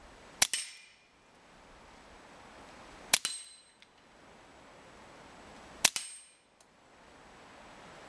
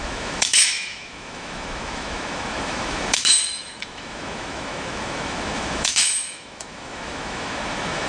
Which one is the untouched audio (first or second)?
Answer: first